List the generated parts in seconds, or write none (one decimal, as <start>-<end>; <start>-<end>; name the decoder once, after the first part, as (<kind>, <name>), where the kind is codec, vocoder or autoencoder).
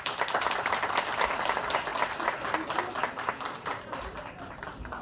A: 0.0-1.9 (vocoder, BigVGAN v2); 4.2-5.0